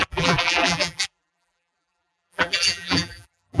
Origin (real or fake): fake